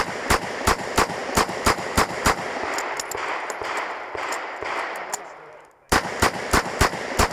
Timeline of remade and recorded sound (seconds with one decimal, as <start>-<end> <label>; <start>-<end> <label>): 0.0-7.3 recorded